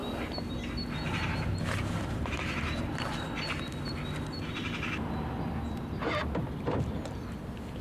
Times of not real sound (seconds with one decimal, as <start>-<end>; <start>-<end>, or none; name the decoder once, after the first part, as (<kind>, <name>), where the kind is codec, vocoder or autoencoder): none